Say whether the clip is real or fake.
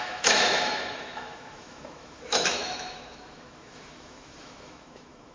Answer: fake